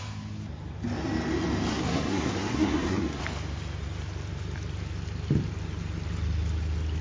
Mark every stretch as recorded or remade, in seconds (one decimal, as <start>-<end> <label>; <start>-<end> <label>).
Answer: 0.0-1.7 recorded; 1.7-3.2 remade; 3.2-7.0 recorded